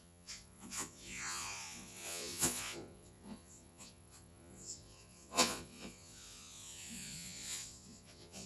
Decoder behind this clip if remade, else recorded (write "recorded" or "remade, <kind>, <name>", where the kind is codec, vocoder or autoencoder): remade, vocoder, Vocos